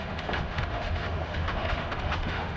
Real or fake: fake